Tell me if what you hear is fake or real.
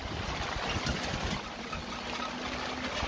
real